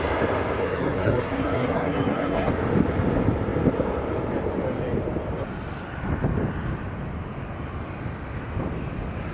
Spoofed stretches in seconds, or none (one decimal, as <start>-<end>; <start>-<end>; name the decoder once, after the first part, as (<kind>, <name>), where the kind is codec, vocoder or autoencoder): 0.6-2.5 (codec, SNAC)